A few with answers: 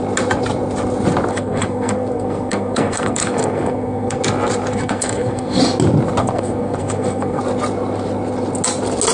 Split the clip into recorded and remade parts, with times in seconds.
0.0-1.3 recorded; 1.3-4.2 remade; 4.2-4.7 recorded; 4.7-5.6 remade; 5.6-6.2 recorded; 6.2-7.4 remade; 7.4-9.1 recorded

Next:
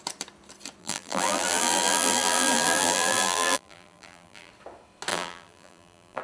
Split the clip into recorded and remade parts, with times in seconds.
0.0-0.8 recorded; 0.8-4.5 remade; 4.5-5.1 recorded; 5.1-6.2 remade

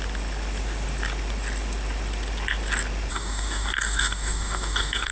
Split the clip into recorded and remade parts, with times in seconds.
0.0-3.1 recorded; 3.1-5.1 remade

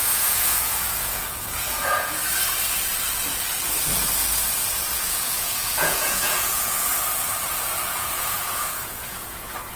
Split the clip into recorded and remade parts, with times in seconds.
0.0-2.2 remade; 2.2-4.9 recorded; 4.9-6.9 remade; 6.9-7.8 recorded; 7.8-9.8 remade

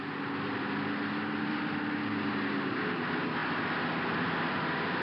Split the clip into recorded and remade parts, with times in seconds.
0.0-5.0 recorded